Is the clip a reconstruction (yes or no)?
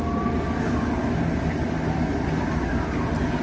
no